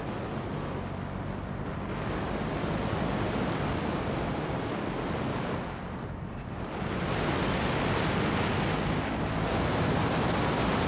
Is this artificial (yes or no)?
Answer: no